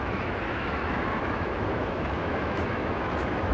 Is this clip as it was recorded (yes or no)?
no